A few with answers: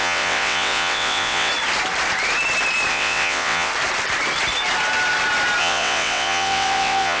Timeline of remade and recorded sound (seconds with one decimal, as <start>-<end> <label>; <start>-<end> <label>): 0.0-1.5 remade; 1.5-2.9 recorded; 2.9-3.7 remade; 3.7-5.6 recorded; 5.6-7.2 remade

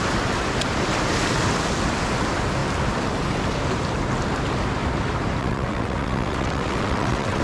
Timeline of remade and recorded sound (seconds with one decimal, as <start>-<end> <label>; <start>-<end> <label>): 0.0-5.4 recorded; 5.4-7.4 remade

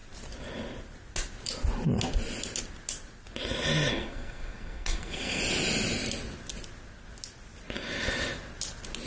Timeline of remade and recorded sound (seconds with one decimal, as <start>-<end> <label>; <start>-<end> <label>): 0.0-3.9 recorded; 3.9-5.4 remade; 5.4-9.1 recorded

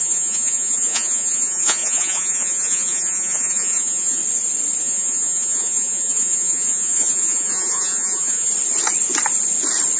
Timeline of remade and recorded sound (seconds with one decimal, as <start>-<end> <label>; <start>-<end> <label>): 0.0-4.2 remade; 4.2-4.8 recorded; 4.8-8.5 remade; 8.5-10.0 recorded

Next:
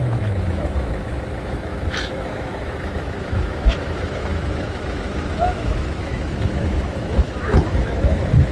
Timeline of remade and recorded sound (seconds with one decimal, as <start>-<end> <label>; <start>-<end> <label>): 0.0-8.5 remade